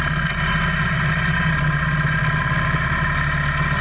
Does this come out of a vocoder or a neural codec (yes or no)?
no